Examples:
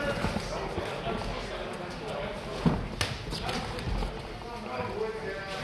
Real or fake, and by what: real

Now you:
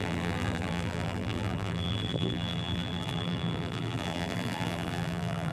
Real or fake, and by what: fake, vocoder, BigVGAN v2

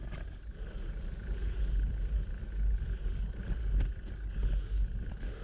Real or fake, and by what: real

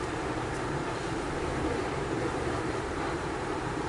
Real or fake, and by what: fake, vocoder, BigVGAN v2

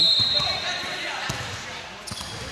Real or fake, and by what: real